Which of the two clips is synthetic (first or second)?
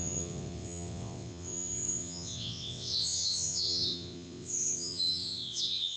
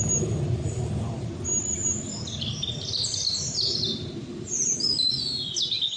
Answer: first